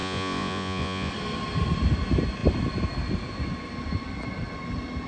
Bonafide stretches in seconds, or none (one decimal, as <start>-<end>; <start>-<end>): 1.1-5.1